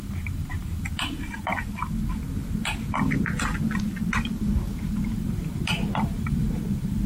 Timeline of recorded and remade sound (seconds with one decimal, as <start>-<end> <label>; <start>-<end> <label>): 0.0-1.5 remade; 1.5-4.7 recorded; 4.7-7.1 remade